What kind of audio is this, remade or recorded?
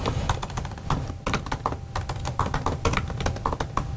recorded